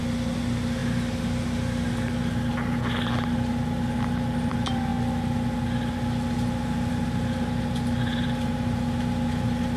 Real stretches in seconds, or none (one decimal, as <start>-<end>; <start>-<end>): 0.0-9.8